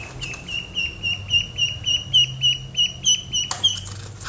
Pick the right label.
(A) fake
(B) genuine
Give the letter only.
B